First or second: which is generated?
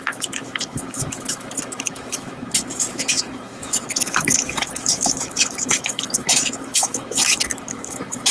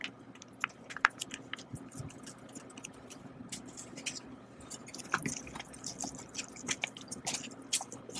first